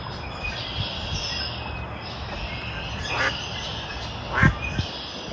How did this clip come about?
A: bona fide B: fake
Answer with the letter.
A